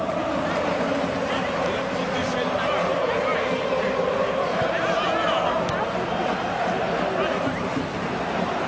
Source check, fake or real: real